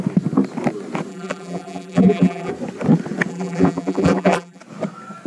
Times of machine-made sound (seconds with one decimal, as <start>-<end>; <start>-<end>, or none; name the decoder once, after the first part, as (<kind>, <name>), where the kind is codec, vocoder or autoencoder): 1.1-2.5 (vocoder, BigVGAN v2); 3.3-4.6